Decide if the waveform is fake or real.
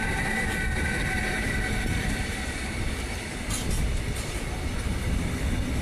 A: fake